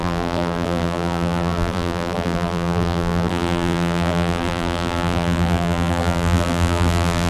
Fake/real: fake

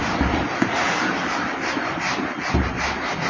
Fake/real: fake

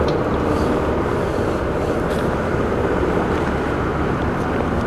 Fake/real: fake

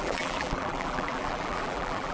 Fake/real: fake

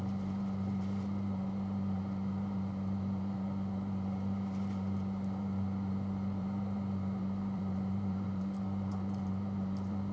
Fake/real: fake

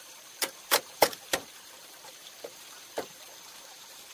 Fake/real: fake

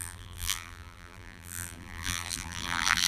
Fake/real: fake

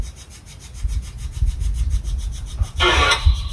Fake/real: fake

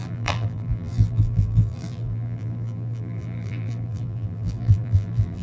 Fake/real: fake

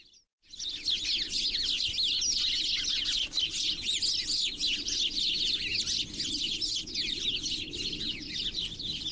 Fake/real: real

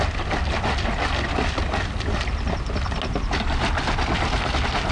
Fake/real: real